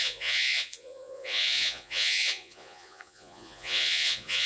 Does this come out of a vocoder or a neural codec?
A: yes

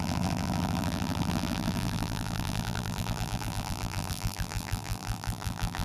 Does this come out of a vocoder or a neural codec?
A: yes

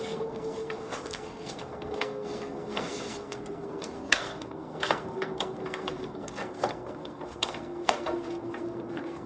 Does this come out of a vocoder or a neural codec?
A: yes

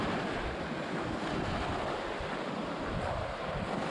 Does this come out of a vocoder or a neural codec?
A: no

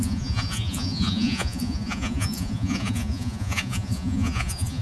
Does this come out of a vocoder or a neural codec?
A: yes